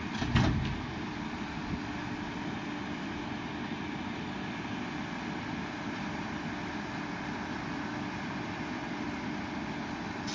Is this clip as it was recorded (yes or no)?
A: yes